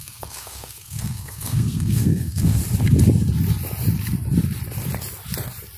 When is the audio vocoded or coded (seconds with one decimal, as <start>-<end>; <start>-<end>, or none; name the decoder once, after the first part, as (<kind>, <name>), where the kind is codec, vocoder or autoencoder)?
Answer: 0.0-2.6 (codec, SNAC)